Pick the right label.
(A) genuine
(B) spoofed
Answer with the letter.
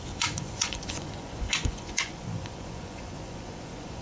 B